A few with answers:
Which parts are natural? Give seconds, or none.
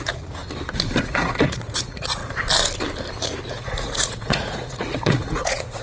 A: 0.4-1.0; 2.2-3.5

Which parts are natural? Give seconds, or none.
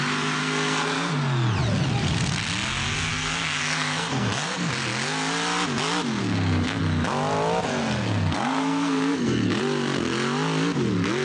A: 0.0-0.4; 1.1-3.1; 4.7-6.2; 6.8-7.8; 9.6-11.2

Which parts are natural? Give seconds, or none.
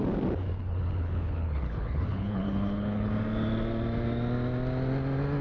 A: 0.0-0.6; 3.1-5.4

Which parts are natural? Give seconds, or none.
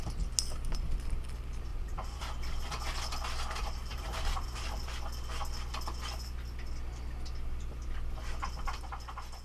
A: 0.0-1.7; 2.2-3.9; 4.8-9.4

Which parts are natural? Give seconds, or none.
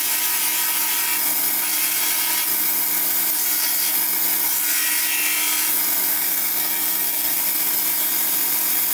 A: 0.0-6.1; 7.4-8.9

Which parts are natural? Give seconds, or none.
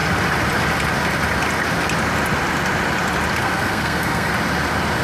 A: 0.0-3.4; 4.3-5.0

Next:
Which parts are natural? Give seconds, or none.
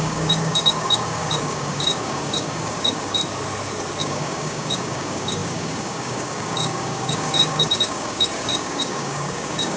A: 3.2-4.0